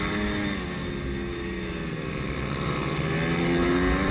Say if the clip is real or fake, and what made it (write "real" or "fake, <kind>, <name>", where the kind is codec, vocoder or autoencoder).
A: real